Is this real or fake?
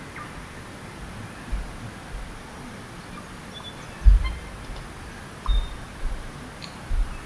real